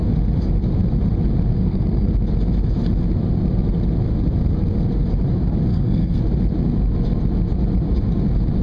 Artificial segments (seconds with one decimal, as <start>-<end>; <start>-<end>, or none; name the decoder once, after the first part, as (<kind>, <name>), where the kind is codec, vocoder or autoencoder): 1.5-2.1 (codec, SNAC); 5.7-6.2